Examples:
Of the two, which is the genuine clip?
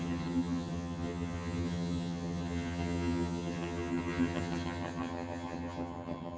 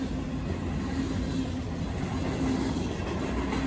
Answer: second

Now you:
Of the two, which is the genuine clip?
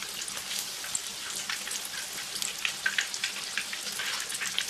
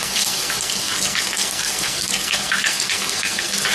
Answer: first